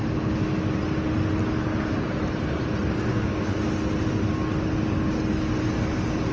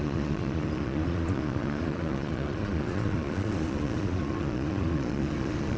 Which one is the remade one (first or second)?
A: second